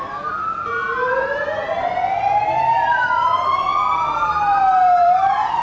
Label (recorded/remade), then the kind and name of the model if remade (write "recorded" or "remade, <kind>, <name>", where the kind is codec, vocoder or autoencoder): recorded